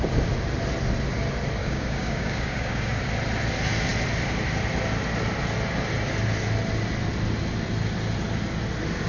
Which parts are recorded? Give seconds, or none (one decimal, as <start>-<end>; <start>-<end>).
0.0-1.6; 3.0-9.1